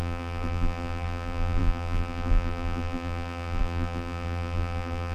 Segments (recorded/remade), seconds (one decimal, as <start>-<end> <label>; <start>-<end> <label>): 0.0-5.1 remade